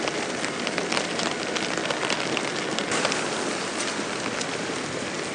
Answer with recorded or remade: remade